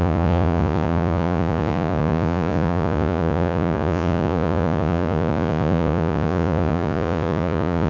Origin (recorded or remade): remade